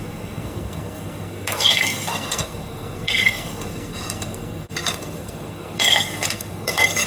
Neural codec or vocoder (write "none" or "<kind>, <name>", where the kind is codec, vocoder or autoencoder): codec, SNAC